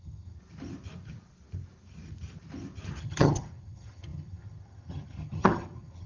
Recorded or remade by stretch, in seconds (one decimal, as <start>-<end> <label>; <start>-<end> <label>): 0.0-0.4 remade; 0.4-3.0 recorded; 3.0-6.1 remade